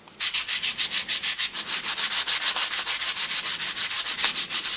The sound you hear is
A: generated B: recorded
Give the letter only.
B